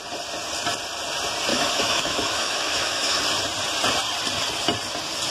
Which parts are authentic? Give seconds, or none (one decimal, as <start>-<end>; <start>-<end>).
0.0-1.5; 3.2-5.3